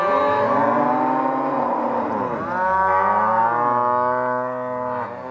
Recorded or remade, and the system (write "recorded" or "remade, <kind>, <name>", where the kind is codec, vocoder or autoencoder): recorded